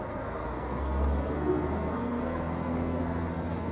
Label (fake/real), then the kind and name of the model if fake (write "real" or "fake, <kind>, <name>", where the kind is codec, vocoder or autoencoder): fake, codec, SNAC